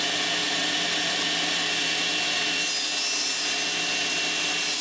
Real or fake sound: real